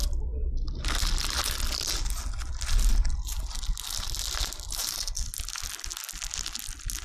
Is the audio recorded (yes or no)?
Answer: yes